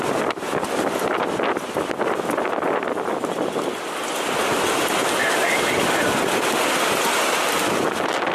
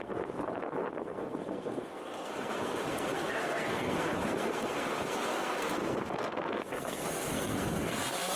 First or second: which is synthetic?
second